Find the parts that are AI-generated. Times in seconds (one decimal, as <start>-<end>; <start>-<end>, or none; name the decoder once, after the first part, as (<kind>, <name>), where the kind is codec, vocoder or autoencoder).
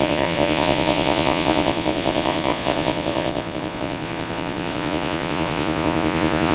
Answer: 0.0-6.5 (vocoder, Vocos)